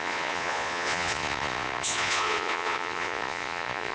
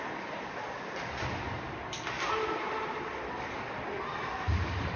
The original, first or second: second